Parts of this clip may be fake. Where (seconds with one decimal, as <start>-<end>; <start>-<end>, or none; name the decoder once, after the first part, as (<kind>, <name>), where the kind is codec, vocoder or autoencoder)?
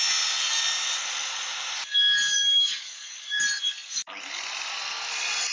2.3-3.4 (codec, DAC)